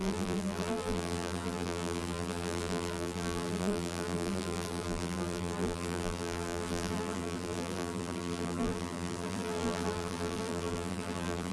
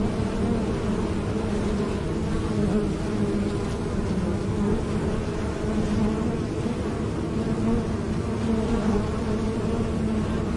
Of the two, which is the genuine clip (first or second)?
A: second